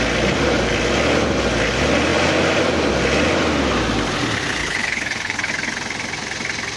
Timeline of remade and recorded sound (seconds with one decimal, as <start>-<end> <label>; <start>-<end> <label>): 0.0-4.6 recorded; 4.6-5.5 remade; 5.5-6.8 recorded